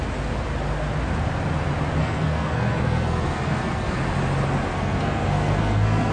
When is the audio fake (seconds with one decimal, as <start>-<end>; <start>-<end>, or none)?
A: 2.0-4.0; 4.7-6.1